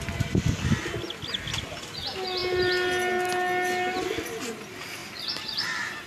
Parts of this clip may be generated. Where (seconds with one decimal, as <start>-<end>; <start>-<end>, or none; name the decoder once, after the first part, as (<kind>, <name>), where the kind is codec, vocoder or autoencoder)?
5.0-6.1 (vocoder, BigVGAN v2)